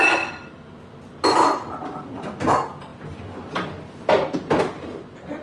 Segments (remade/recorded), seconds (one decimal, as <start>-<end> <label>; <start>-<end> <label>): 0.0-2.9 recorded; 2.9-4.6 remade; 4.6-5.4 recorded